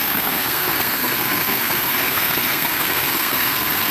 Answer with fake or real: fake